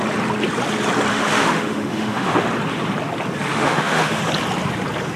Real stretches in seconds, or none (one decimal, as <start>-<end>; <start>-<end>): 0.0-1.1; 2.5-3.5; 4.2-5.2

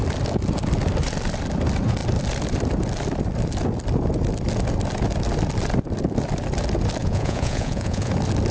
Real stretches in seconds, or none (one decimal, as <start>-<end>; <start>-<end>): 0.0-7.0; 8.1-8.5